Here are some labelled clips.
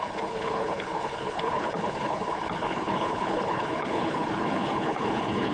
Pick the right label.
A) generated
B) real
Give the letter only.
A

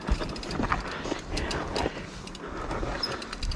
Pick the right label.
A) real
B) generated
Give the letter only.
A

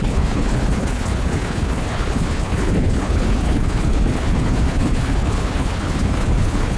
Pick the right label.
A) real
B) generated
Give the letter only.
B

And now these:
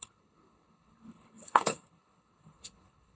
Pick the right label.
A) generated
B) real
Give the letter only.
A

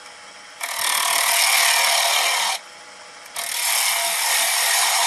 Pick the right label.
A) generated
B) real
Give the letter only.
B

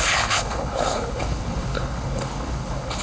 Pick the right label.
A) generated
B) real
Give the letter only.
A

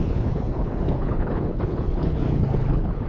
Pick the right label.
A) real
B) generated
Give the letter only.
B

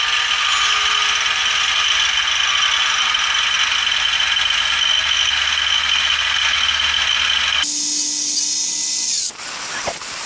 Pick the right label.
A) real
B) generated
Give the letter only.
A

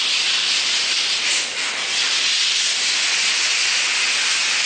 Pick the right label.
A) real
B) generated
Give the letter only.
A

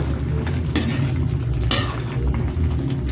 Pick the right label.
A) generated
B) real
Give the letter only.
B